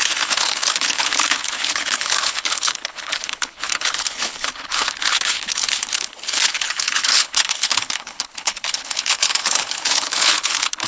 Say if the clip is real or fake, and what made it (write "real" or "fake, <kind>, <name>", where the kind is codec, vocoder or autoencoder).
fake, codec, HILCodec